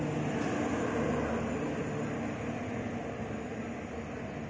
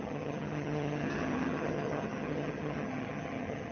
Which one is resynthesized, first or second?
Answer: second